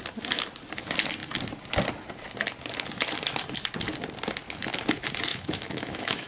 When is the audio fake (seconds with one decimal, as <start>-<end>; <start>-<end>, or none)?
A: 5.3-6.3